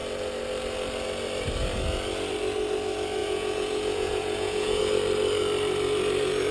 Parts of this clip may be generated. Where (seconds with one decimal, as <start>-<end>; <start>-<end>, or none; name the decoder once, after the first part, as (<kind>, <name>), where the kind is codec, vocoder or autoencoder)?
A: 3.2-4.8 (vocoder, Vocos)

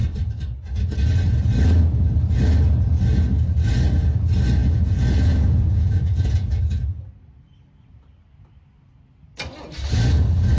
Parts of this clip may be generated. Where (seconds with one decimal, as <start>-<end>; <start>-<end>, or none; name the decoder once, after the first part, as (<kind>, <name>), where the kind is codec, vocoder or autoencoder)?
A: 4.6-7.1 (vocoder, Vocos)

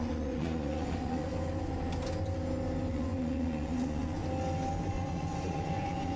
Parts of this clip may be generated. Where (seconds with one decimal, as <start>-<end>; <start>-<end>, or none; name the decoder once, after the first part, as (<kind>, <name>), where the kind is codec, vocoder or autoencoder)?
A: 0.0-1.3 (vocoder, Vocos); 2.9-4.2; 4.9-6.2

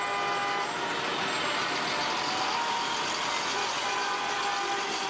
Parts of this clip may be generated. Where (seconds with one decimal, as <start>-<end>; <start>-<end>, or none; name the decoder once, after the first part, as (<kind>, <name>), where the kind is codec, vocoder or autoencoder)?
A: 3.5-4.4 (vocoder, Vocos)